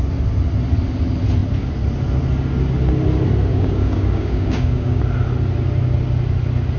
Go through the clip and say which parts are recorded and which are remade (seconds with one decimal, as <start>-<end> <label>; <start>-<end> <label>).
0.0-3.5 recorded; 3.5-5.0 remade; 5.0-6.8 recorded

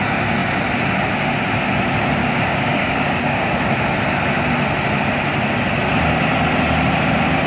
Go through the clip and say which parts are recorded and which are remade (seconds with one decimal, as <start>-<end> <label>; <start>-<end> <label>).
0.0-2.2 recorded; 2.2-3.6 remade; 3.6-7.5 recorded

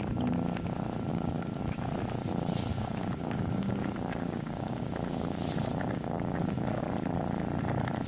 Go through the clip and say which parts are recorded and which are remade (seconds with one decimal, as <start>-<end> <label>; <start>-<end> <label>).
0.0-1.1 recorded; 1.1-1.6 remade; 1.6-2.7 recorded; 2.7-6.8 remade; 6.8-8.1 recorded

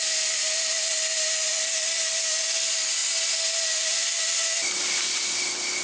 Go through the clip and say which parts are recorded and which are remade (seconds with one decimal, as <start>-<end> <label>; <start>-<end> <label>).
0.0-5.8 recorded